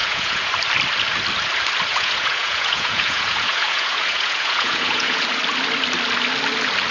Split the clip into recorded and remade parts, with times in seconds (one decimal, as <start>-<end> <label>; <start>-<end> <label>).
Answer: 0.0-0.5 remade; 0.5-1.9 recorded; 1.9-5.2 remade; 5.2-6.9 recorded